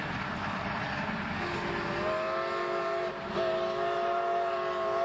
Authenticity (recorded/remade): recorded